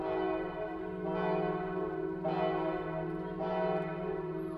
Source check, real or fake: real